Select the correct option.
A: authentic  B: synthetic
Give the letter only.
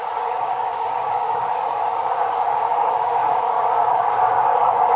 B